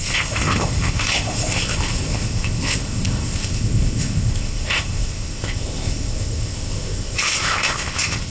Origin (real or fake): fake